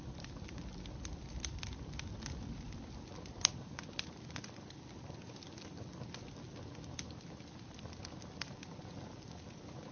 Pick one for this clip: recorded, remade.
recorded